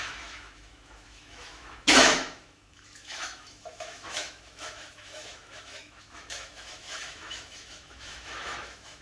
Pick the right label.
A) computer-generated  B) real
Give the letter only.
A